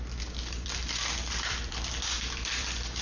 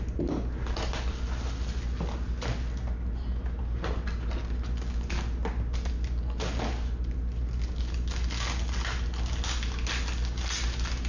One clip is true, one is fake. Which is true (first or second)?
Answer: second